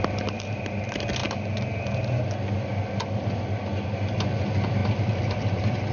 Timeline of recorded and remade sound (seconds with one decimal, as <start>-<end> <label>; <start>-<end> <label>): 0.0-4.8 recorded; 4.8-5.4 remade; 5.4-5.9 recorded